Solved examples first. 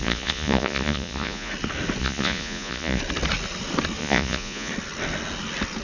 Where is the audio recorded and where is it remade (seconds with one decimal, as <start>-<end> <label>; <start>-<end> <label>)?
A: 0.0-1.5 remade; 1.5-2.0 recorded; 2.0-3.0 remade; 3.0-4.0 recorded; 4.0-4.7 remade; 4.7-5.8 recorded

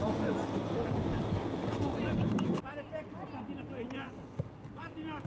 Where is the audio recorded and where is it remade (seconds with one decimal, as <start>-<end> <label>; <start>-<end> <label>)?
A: 0.0-5.3 recorded

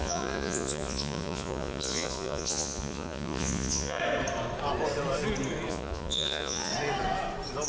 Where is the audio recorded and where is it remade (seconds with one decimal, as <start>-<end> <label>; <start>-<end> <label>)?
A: 0.0-4.0 remade; 4.0-5.7 recorded; 5.7-6.7 remade; 6.7-7.7 recorded

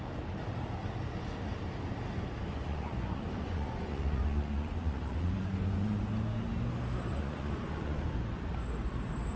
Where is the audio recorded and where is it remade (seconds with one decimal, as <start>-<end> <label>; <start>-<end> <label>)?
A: 0.0-2.5 recorded; 2.5-6.0 remade; 6.0-7.1 recorded; 7.1-8.0 remade; 8.0-9.4 recorded

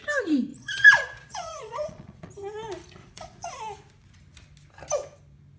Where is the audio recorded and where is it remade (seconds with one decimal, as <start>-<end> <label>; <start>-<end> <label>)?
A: 0.0-0.5 recorded; 0.5-2.3 remade; 2.3-3.0 recorded; 3.0-3.5 remade; 3.5-5.6 recorded

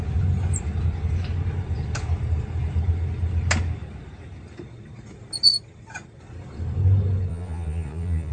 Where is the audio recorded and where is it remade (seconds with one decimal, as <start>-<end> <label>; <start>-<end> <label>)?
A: 0.0-7.3 recorded; 7.3-8.3 remade